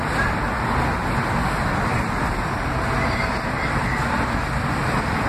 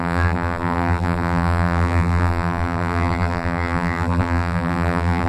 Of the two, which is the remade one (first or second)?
second